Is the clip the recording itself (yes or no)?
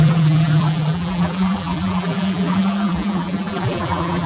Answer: no